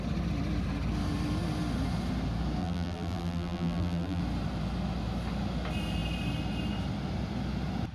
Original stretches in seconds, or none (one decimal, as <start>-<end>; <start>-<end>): 0.0-2.6; 4.2-7.9